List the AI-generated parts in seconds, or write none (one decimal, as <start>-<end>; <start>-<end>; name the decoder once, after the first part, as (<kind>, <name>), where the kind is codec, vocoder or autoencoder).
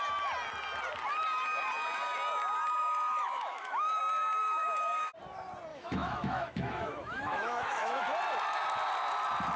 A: 2.8-4.0 (autoencoder, DAC-VAE); 4.4-5.1; 5.7-8.0